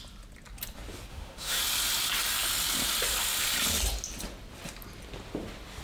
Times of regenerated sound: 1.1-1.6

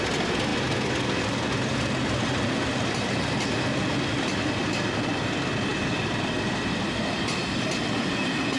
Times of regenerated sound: none

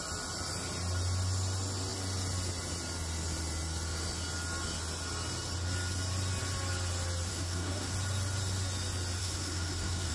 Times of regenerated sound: 7.3-7.9; 9.2-10.1

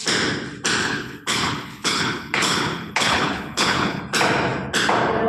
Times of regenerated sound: 0.8-4.0

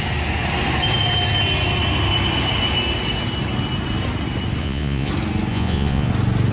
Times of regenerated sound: 4.6-5.1; 5.5-6.1

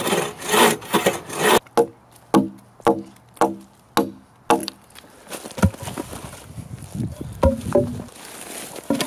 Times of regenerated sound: 4.6-5.6

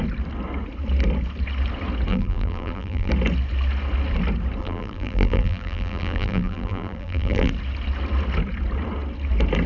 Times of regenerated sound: 2.1-3.1; 4.6-7.5

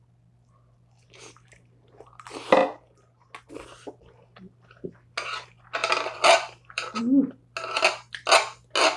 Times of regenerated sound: 5.8-7.0